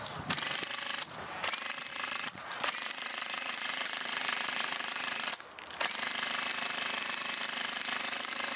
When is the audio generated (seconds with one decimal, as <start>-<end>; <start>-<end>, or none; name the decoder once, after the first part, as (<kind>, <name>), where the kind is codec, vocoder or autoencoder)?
1.9-5.3 (vocoder, Vocos)